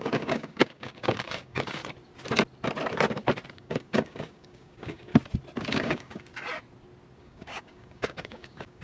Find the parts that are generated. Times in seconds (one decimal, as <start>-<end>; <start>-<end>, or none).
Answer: 0.0-1.8; 3.5-5.1; 5.7-6.3; 7.2-8.8